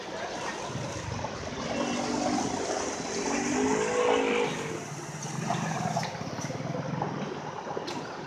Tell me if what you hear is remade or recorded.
recorded